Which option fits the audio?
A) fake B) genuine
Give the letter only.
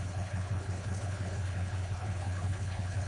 A